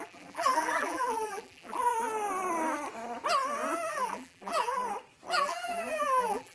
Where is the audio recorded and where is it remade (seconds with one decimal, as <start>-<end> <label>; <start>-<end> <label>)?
0.0-1.9 remade; 1.9-3.9 recorded; 3.9-4.8 remade; 4.8-5.3 recorded; 5.3-6.5 remade